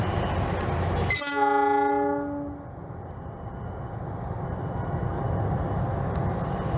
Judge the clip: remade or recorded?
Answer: recorded